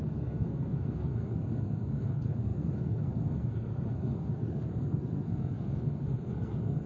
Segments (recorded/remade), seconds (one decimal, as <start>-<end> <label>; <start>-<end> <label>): 0.0-6.9 remade